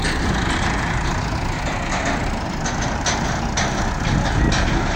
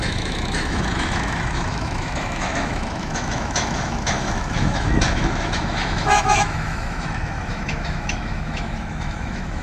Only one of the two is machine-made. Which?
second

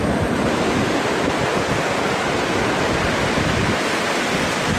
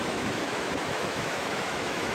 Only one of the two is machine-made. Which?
second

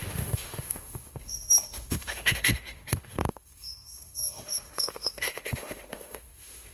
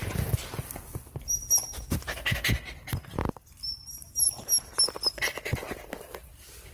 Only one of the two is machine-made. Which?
first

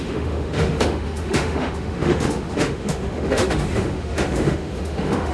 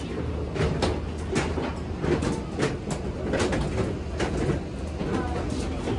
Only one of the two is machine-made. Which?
first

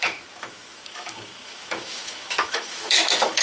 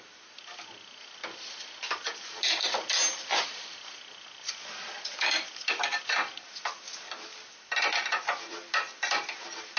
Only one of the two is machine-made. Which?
first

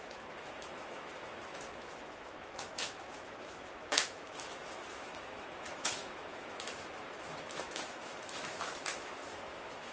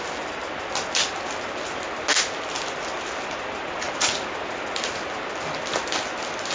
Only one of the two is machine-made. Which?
first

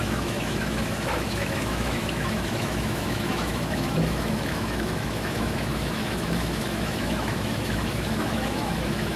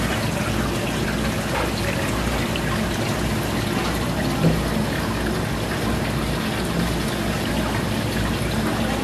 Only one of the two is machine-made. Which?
first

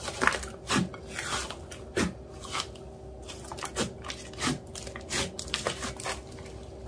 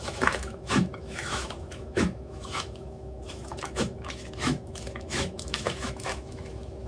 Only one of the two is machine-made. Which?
second